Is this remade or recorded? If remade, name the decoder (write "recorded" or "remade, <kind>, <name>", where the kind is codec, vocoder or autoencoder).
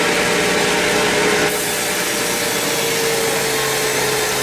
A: recorded